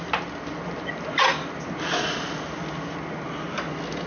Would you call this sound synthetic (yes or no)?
no